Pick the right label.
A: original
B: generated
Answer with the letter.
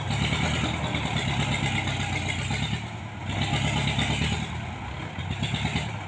A